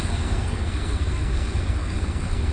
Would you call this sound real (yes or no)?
no